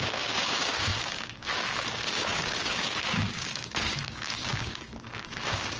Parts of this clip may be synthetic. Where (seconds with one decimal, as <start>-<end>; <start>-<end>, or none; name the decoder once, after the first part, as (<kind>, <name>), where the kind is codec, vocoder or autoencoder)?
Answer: 0.0-5.8 (codec, DAC)